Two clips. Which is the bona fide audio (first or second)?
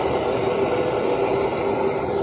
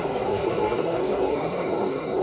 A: first